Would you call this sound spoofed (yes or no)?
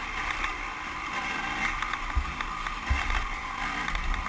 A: no